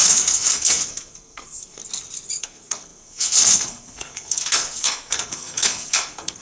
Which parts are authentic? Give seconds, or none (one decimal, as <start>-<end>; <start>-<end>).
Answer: 1.8-2.4